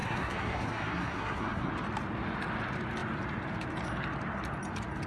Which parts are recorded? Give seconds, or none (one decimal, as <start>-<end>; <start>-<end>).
1.7-5.1